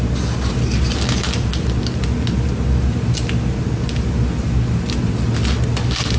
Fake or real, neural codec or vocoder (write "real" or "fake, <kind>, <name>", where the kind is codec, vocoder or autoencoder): real